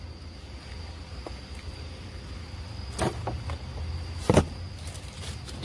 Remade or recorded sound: recorded